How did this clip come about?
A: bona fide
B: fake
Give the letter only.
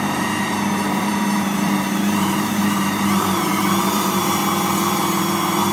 B